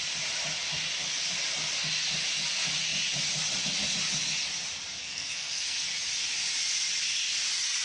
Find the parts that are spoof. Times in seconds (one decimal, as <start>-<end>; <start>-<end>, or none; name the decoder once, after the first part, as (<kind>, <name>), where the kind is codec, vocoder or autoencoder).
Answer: 5.0-5.8 (codec, SNAC)